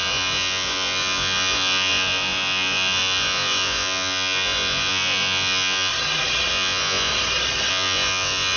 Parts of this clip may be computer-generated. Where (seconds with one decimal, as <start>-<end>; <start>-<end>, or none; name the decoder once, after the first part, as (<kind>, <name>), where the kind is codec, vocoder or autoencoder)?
0.0-5.9 (vocoder, Vocos); 6.5-7.1; 7.7-8.6